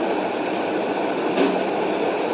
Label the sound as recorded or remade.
remade